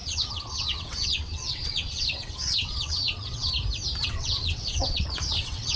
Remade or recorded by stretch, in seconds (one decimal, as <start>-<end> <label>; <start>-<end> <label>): 0.0-3.5 remade; 3.5-4.0 recorded; 4.0-5.8 remade